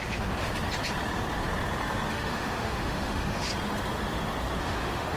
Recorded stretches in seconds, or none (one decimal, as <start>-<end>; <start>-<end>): 0.5-2.1; 3.5-4.6